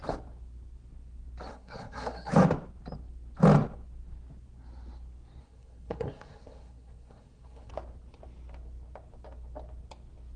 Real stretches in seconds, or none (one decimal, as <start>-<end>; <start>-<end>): 0.0-1.5; 2.3-5.4; 7.7-10.4